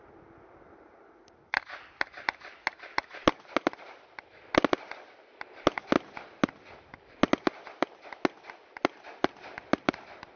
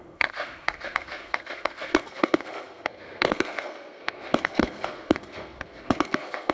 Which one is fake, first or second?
second